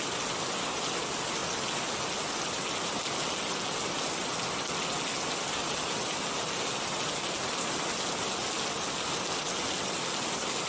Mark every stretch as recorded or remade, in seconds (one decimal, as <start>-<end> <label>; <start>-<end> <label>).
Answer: 0.0-10.7 recorded